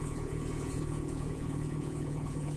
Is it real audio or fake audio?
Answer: fake